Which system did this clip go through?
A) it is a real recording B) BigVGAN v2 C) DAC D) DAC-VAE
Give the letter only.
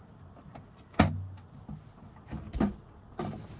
A